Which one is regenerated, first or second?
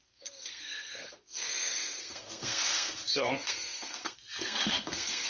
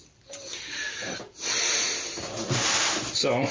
first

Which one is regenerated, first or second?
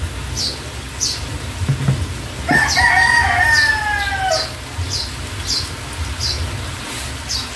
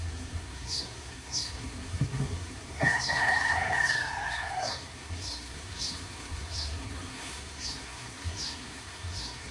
second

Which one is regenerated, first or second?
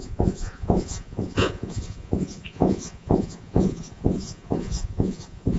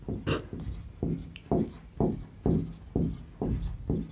first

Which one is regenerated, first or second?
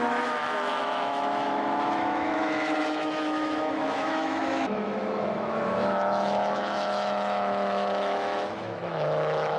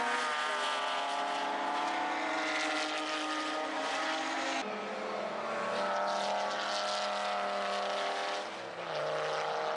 first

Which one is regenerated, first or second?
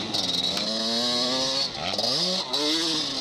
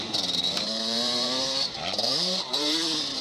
second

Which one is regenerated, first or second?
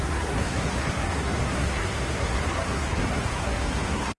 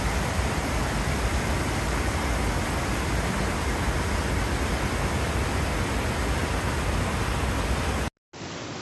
first